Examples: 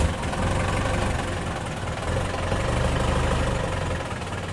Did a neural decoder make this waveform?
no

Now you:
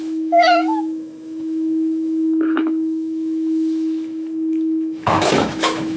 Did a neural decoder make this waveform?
yes